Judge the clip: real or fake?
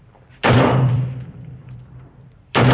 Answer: fake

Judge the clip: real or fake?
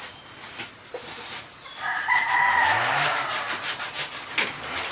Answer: real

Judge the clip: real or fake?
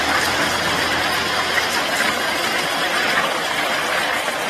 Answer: fake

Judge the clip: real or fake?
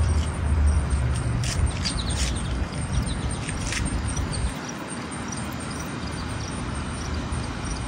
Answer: fake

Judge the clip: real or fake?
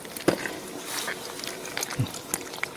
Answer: real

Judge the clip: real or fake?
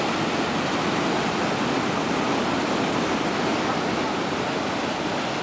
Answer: real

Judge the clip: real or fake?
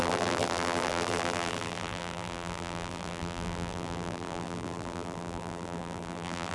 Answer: fake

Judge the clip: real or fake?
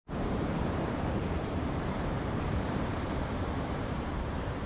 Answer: fake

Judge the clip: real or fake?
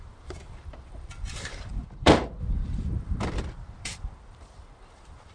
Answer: fake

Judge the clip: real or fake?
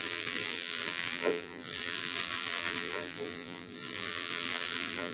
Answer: fake